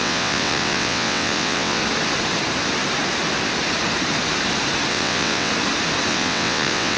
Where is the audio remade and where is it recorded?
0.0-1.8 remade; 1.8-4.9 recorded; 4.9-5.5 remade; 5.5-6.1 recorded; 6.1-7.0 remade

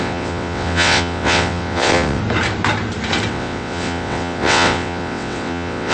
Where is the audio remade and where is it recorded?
0.0-2.2 remade; 2.2-3.3 recorded; 3.3-5.9 remade

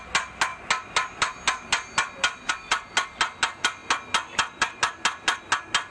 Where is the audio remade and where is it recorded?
0.0-5.9 recorded

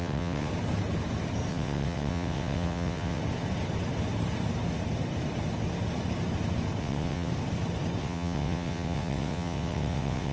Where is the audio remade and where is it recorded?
0.0-0.5 remade; 0.5-1.5 recorded; 1.5-3.2 remade; 3.2-6.8 recorded; 6.8-7.3 remade; 7.3-8.0 recorded; 8.0-10.3 remade

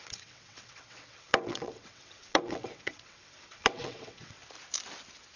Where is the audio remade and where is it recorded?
0.0-4.4 remade; 4.4-5.4 recorded

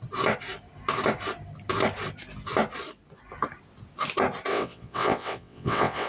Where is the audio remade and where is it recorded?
0.0-4.5 recorded; 4.5-6.1 remade

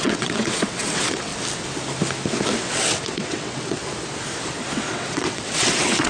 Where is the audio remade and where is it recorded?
0.0-1.3 remade; 1.3-2.6 recorded; 2.6-3.8 remade; 3.8-4.9 recorded; 4.9-6.1 remade